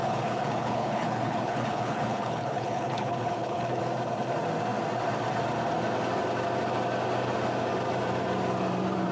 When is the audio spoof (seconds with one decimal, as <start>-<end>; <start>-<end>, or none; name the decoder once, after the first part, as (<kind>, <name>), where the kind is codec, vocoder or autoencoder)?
0.0-3.8 (codec, HILCodec)